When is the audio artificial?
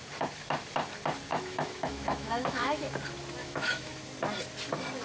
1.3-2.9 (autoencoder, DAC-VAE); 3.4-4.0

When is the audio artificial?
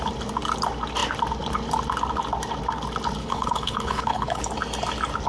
3.2-4.4 (codec, HILCodec)